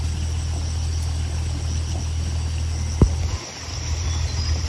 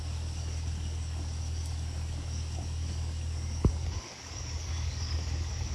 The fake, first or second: second